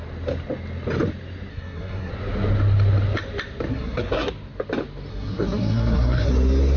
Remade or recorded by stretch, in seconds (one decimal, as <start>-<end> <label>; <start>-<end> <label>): 0.0-1.5 recorded; 1.5-2.1 remade; 2.1-3.7 recorded; 3.7-4.3 remade; 4.3-5.1 recorded; 5.1-6.3 remade; 6.3-6.8 recorded